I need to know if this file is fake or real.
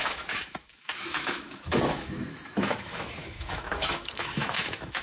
fake